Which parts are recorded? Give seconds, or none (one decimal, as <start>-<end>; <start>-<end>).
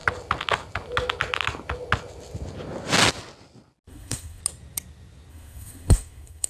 0.0-3.9; 4.4-5.3